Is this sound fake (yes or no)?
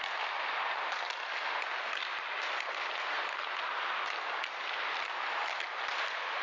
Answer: no